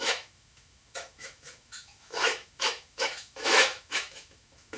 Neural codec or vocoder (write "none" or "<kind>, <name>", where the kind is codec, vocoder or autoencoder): autoencoder, DAC-VAE